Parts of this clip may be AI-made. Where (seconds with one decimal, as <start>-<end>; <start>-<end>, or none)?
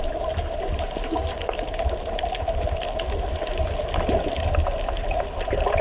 1.1-1.8